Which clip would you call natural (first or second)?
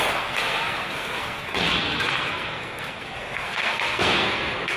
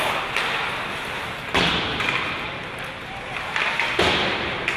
second